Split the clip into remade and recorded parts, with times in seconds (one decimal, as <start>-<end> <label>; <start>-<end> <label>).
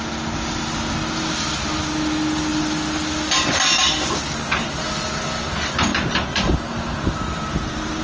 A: 0.0-6.3 recorded; 6.3-8.0 remade